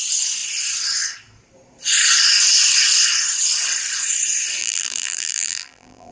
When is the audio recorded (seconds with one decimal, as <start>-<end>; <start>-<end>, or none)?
0.0-4.6

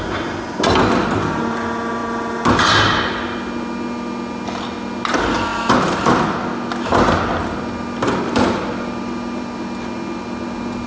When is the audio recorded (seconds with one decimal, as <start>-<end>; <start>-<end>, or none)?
0.0-10.9

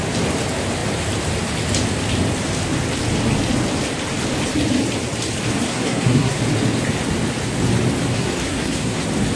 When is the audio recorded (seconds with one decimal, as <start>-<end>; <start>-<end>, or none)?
0.0-5.7; 6.4-8.1; 9.0-9.4

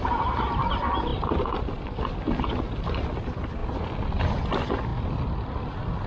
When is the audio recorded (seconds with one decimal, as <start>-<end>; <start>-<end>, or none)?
0.0-6.1

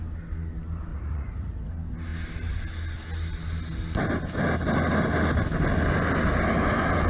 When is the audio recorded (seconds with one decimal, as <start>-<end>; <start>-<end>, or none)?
0.0-0.9; 1.7-7.1

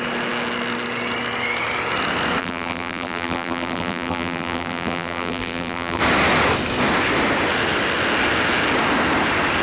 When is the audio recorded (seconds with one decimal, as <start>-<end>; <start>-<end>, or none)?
0.0-2.4; 6.0-9.6

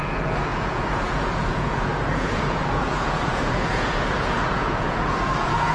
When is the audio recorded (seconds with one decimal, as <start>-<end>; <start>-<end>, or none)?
none